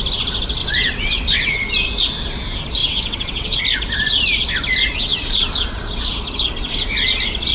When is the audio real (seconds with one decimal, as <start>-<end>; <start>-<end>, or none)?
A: 0.0-0.6; 1.7-2.8; 3.6-7.5